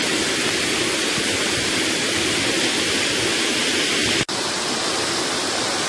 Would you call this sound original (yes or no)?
yes